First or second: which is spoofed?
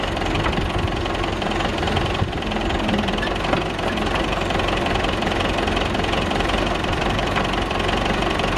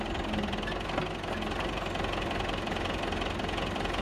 first